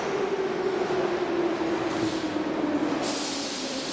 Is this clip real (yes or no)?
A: yes